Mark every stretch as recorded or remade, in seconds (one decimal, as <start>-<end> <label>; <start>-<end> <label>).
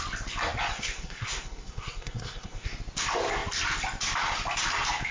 0.0-0.7 recorded; 0.7-2.7 remade; 2.7-5.1 recorded